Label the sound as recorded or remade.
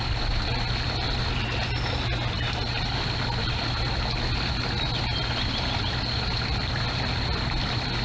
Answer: recorded